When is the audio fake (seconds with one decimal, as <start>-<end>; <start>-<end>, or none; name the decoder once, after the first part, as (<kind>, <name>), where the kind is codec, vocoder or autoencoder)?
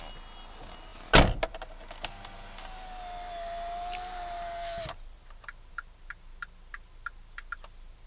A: none